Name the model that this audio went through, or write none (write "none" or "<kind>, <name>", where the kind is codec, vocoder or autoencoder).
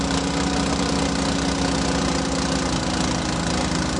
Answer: none